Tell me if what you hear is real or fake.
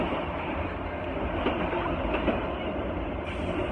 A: real